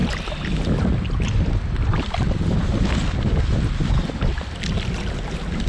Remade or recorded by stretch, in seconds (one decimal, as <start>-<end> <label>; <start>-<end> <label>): 0.0-5.7 recorded

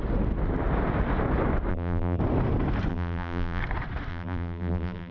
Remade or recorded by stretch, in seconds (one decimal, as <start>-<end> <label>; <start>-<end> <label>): 0.0-1.7 recorded; 1.7-2.2 remade; 2.2-2.9 recorded; 2.9-3.6 remade; 3.6-4.1 recorded; 4.1-5.1 remade

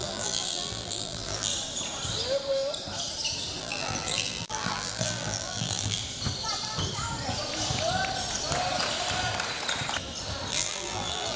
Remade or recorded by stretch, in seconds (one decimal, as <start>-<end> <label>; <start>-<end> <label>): 0.0-1.5 remade; 1.5-3.6 recorded; 3.6-6.0 remade; 6.0-10.5 recorded; 10.5-11.4 remade

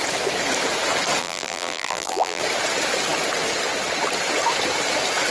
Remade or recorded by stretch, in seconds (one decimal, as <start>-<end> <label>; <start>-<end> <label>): 0.0-1.2 recorded; 1.2-2.4 remade; 2.4-5.3 recorded